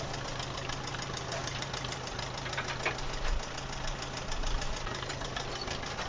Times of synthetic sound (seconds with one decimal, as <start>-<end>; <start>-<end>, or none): none